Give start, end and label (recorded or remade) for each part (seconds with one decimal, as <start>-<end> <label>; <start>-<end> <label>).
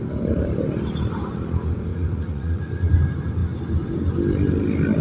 0.0-1.9 recorded; 1.9-2.9 remade; 2.9-5.0 recorded